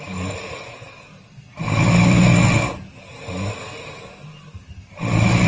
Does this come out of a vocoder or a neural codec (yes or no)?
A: no